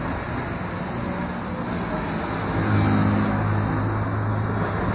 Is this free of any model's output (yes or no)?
yes